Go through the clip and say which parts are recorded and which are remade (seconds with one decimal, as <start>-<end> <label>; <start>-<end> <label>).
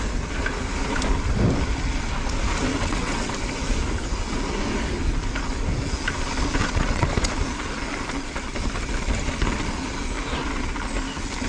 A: 0.0-2.7 recorded; 2.7-3.3 remade; 3.3-6.6 recorded; 6.6-7.1 remade; 7.1-11.5 recorded